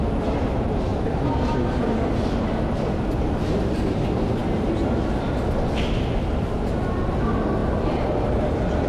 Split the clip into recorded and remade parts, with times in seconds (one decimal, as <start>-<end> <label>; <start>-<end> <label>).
0.0-0.9 recorded; 0.9-1.8 remade; 1.8-8.9 recorded